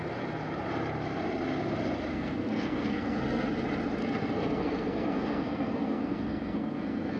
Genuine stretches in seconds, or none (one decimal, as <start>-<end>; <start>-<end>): 0.0-2.1; 3.5-4.0